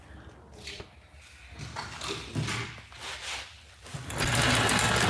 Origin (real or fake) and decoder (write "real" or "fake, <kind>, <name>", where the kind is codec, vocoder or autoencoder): real